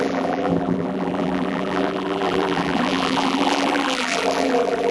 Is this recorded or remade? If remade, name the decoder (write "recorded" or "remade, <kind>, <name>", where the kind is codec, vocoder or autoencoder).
remade, vocoder, BigVGAN v2